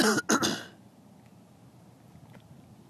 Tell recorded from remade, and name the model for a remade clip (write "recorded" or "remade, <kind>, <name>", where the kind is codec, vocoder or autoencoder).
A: recorded